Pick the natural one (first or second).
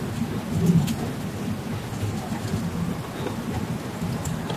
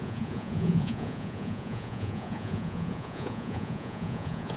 first